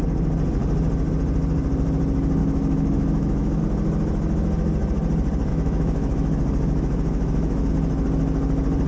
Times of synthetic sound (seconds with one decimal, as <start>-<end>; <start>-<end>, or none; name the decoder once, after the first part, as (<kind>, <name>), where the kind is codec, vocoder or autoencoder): 2.4-3.6 (autoencoder, DAC-VAE); 5.5-7.7